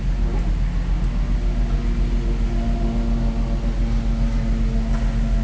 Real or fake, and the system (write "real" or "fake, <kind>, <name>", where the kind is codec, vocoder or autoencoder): real